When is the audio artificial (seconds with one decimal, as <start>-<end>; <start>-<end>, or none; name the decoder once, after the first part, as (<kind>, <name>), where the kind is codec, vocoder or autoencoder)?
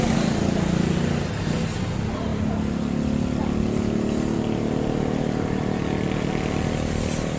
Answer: none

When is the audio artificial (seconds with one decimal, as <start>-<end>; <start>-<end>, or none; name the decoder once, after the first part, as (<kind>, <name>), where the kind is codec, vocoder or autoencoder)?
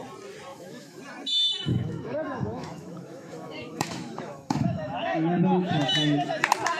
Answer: 0.5-1.0 (autoencoder, DAC-VAE); 1.7-5.8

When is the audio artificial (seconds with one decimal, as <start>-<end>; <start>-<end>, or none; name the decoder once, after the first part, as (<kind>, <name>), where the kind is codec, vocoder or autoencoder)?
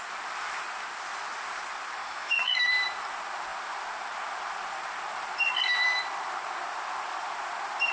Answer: 2.0-2.7 (autoencoder, DAC-VAE)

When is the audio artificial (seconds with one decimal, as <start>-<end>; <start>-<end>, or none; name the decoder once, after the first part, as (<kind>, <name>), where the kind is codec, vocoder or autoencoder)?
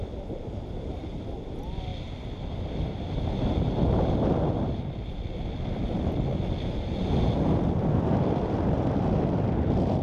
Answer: none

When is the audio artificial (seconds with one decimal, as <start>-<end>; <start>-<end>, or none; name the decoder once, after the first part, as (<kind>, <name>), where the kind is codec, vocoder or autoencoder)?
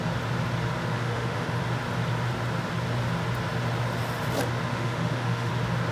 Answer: 0.9-1.6 (autoencoder, DAC-VAE); 4.7-5.5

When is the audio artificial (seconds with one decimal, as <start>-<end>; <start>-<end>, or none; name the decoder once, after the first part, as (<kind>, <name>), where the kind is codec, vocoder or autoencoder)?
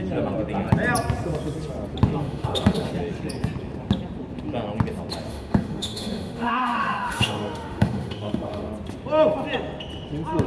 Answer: 2.2-2.9 (autoencoder, DAC-VAE); 5.3-8.7